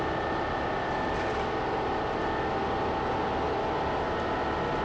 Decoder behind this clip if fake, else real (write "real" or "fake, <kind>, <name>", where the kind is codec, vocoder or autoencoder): real